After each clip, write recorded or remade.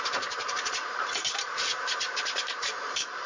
remade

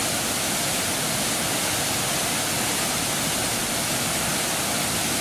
recorded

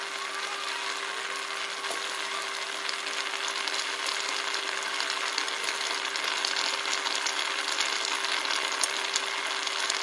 recorded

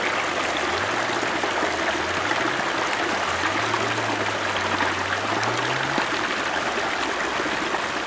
recorded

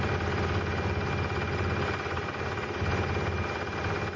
recorded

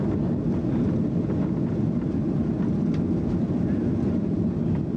recorded